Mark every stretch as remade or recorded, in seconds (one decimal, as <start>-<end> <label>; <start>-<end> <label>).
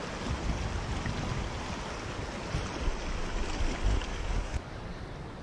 0.0-4.1 recorded; 4.1-5.0 remade; 5.0-5.4 recorded